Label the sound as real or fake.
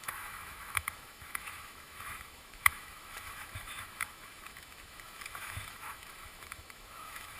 fake